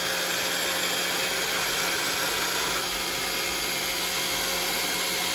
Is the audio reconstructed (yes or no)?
no